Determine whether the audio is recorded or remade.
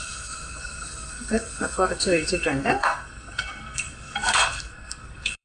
remade